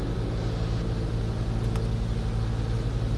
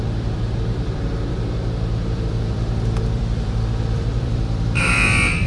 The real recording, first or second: first